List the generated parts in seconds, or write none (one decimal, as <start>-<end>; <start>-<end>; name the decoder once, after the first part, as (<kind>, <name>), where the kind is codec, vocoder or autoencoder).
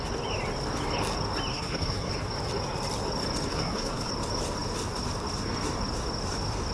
1.5-2.1 (codec, SNAC); 3.5-4.1